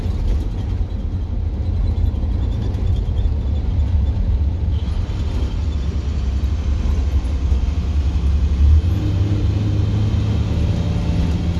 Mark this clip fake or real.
real